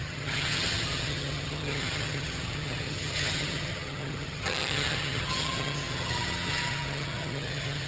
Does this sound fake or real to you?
fake